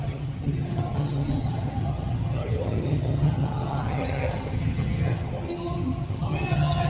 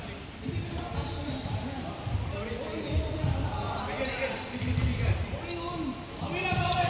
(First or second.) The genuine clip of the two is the second